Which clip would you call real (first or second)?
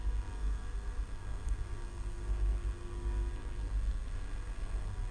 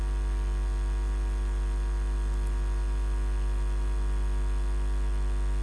second